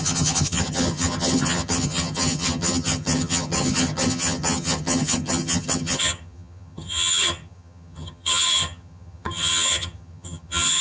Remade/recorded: remade